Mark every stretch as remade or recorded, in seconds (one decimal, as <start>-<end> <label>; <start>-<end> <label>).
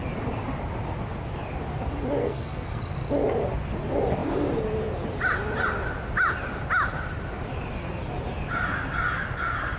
0.0-2.2 recorded; 2.2-2.9 remade; 2.9-9.8 recorded